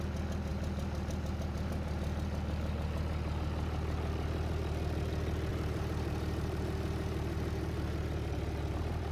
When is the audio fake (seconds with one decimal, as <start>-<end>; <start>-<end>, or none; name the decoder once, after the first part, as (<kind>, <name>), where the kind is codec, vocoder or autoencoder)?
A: 0.5-1.7 (vocoder, BigVGAN v2); 5.5-9.1